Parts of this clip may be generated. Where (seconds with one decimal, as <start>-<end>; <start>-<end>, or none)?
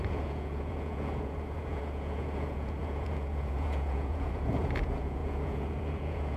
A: 0.0-6.4